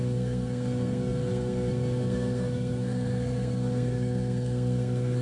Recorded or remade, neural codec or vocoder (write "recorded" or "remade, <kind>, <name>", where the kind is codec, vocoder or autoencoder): remade, codec, SNAC